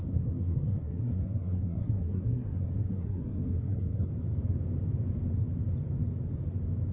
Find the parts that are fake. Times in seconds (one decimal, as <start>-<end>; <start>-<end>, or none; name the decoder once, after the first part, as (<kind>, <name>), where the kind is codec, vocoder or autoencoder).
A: 0.0-4.1 (codec, SNAC)